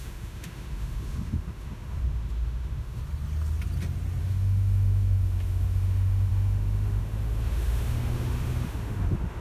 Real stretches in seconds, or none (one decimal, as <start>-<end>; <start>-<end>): 3.0-4.2